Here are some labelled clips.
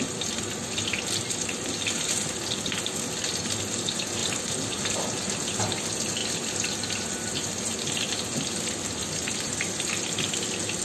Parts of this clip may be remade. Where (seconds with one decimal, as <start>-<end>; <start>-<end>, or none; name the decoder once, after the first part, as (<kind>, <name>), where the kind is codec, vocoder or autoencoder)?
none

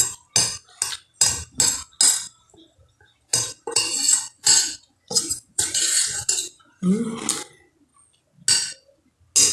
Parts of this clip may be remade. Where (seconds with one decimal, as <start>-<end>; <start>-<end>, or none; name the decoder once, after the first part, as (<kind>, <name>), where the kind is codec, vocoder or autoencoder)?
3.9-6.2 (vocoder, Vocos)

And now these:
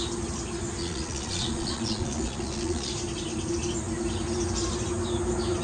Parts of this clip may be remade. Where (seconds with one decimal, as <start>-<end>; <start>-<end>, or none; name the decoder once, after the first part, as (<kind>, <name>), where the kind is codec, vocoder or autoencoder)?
0.8-2.9 (vocoder, Vocos)

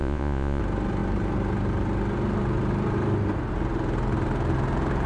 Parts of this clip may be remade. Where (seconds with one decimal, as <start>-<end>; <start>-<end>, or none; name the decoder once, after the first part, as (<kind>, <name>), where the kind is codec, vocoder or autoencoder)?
0.0-0.6 (vocoder, Vocos)

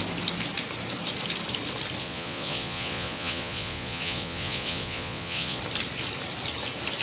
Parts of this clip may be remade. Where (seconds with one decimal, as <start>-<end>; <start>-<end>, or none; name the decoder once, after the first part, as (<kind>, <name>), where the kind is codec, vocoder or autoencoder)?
2.0-5.6 (vocoder, Vocos)